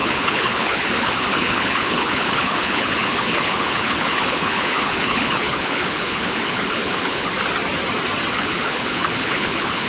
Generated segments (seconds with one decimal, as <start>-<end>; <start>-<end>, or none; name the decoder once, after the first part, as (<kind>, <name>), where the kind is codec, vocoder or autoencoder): 0.0-7.3 (codec, HILCodec); 8.3-9.9